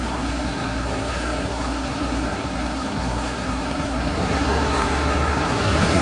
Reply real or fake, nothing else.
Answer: fake